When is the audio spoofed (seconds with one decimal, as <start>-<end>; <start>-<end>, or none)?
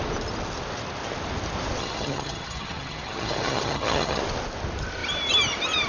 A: 1.8-4.2